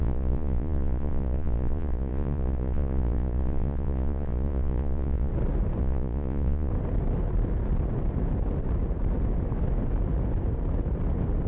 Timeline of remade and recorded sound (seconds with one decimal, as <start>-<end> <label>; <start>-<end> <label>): 0.0-5.3 remade; 5.3-5.8 recorded; 5.8-6.7 remade; 6.7-11.5 recorded